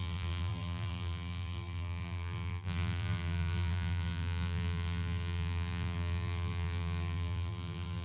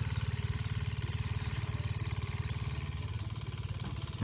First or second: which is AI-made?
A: first